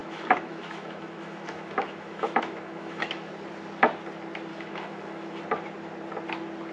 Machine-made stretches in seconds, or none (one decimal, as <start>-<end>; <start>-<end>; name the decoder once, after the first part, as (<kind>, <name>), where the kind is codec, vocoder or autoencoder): 0.0-3.3 (autoencoder, DAC-VAE); 4.5-5.4